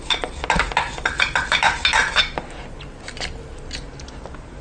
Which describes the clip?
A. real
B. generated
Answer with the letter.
A